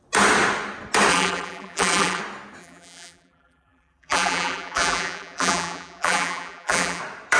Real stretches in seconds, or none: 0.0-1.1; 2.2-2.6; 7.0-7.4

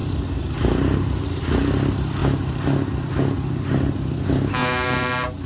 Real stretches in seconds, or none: 1.4-2.2; 3.1-5.5

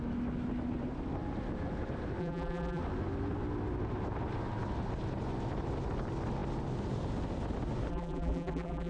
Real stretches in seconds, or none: 0.0-2.2; 2.8-7.9

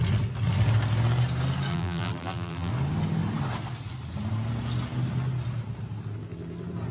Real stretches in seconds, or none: 0.0-1.7; 2.7-6.9

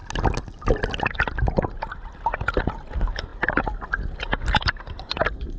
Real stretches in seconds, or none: 0.0-2.6; 3.3-4.9

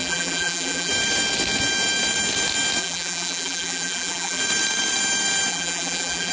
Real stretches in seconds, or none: 0.9-2.8; 4.4-5.5